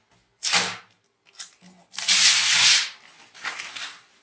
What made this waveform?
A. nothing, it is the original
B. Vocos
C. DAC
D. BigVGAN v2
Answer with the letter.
A